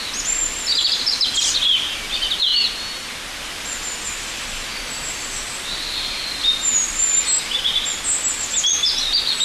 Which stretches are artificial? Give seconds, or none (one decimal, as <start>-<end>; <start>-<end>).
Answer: none